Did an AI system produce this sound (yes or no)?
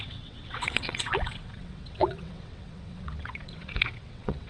yes